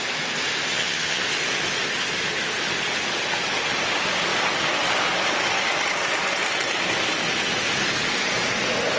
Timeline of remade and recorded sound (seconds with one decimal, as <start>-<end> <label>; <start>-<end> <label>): 0.0-0.7 recorded; 0.7-1.2 remade; 1.2-9.0 recorded